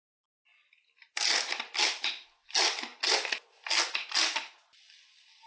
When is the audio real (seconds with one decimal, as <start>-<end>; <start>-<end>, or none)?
0.0-0.5; 2.1-5.5